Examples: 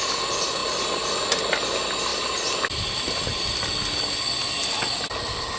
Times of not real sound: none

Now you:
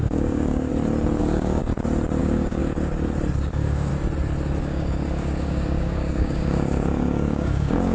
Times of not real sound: 0.0-0.7 (codec, DAC); 1.2-1.6; 2.2-2.6; 3.5-3.9; 4.6-7.9

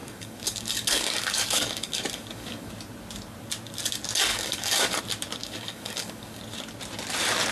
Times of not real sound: 0.0-2.7 (codec, DAC); 4.3-5.0; 5.4-6.4

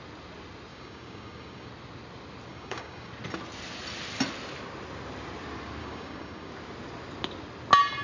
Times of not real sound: 0.7-1.7 (codec, DAC); 2.5-3.1; 5.8-6.5

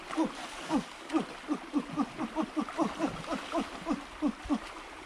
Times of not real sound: 0.5-1.1 (codec, DAC)

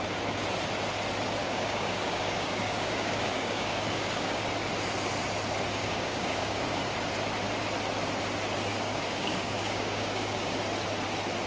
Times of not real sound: 1.4-4.4 (codec, DAC); 5.8-6.8; 8.7-10.6

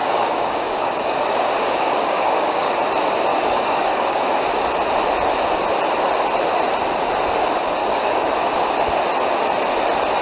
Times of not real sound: 0.0-2.7 (codec, DAC); 3.3-4.2; 7.8-8.3